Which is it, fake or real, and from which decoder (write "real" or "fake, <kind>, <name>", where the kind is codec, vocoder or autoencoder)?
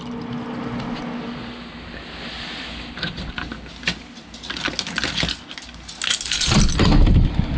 real